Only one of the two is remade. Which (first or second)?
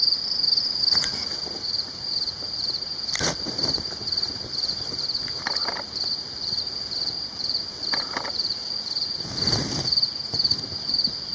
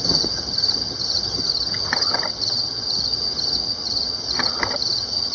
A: second